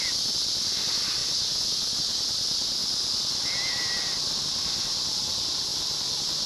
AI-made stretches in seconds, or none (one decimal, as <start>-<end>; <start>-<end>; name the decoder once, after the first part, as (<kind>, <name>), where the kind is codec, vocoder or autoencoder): none

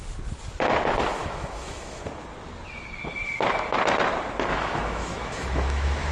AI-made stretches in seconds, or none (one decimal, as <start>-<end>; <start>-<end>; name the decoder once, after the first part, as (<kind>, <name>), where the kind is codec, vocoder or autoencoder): 1.2-2.0 (autoencoder, DAC-VAE); 4.5-6.1